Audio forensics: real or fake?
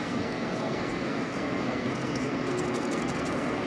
fake